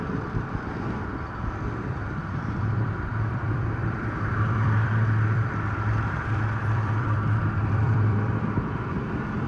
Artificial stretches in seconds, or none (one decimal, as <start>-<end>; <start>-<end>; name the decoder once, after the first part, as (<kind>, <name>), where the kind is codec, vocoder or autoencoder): 0.0-1.1 (vocoder, BigVGAN v2); 1.9-9.5